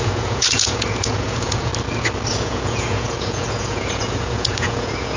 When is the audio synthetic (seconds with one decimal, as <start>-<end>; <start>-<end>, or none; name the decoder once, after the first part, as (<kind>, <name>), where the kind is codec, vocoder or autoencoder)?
0.0-1.7 (vocoder, Vocos); 2.3-5.2